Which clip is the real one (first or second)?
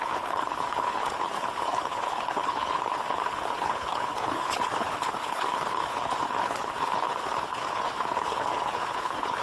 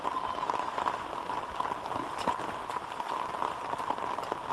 second